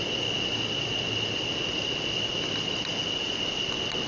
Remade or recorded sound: recorded